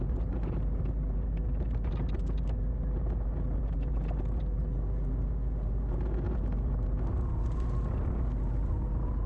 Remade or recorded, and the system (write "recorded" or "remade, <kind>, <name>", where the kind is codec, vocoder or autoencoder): recorded